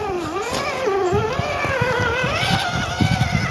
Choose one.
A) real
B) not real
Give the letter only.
A